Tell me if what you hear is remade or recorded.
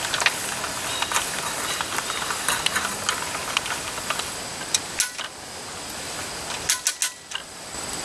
recorded